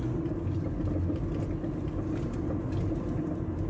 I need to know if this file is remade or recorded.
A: recorded